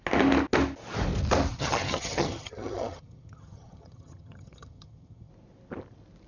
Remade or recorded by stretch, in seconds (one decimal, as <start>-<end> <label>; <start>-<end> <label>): 0.0-1.5 recorded; 1.5-5.3 remade; 5.3-6.3 recorded